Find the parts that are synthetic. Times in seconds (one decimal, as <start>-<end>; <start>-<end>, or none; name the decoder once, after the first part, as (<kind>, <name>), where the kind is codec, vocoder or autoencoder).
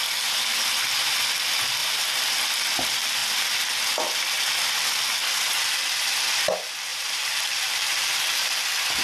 1.8-2.3 (vocoder, BigVGAN v2); 6.9-8.6